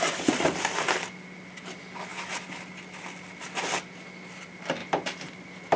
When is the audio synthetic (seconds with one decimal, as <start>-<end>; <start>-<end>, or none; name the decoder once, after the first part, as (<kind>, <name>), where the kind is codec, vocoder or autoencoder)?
none